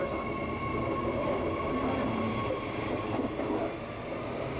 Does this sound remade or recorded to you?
recorded